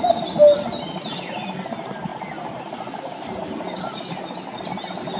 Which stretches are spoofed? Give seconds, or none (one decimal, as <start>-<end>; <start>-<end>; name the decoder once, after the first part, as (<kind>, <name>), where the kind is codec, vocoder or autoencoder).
none